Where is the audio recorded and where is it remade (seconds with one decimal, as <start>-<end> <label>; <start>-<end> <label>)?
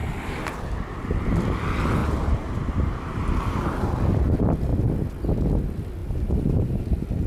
0.0-0.6 remade; 0.6-2.0 recorded; 2.0-3.2 remade; 3.2-6.0 recorded; 6.0-6.8 remade; 6.8-7.3 recorded